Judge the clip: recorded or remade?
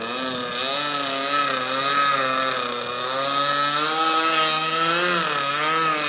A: recorded